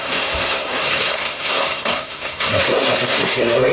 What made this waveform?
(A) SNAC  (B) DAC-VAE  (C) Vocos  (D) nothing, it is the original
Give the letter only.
A